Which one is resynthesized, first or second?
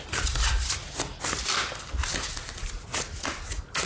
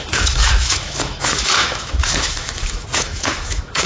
second